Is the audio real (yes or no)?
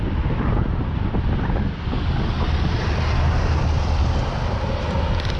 yes